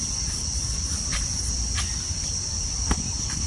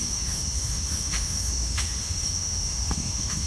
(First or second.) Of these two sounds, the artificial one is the second